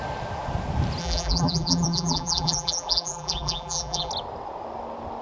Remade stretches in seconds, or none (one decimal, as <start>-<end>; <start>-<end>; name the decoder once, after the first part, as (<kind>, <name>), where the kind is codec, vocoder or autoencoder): 1.0-4.1 (vocoder, BigVGAN v2)